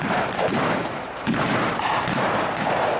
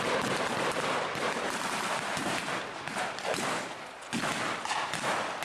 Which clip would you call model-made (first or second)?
first